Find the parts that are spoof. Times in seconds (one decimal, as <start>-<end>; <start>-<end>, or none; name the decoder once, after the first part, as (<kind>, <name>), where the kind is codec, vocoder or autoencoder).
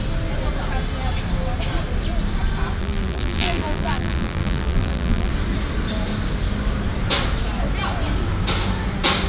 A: 2.8-5.3 (vocoder, BigVGAN v2)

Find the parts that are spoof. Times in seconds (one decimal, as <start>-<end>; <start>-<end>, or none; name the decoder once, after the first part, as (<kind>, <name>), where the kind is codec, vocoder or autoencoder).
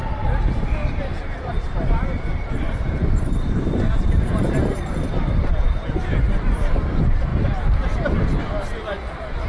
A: 0.8-5.7 (vocoder, BigVGAN v2)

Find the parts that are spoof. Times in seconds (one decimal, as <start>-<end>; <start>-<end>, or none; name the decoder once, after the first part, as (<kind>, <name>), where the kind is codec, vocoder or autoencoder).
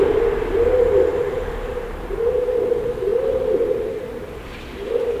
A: 1.1-2.3 (vocoder, BigVGAN v2); 3.1-5.2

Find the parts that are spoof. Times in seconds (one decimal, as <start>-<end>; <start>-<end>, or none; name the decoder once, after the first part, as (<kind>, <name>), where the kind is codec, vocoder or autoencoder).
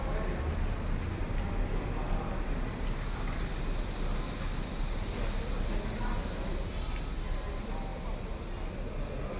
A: none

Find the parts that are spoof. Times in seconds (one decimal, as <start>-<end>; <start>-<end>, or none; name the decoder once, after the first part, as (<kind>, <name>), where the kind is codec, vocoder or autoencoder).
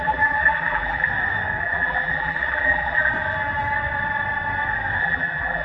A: 0.0-1.1 (vocoder, BigVGAN v2); 1.6-3.1; 5.0-5.6